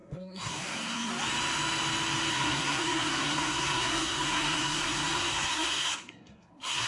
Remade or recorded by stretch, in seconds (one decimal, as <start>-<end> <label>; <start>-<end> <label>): 0.0-1.1 remade; 1.1-2.3 recorded; 2.3-6.9 remade